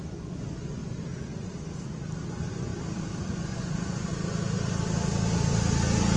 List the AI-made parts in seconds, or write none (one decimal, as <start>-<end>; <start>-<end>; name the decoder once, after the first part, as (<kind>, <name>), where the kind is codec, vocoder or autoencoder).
0.0-0.8 (vocoder, Vocos); 2.3-2.7; 3.3-4.1